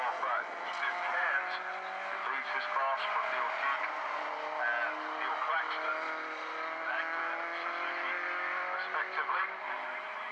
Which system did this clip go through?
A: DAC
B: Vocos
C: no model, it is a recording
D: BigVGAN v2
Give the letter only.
C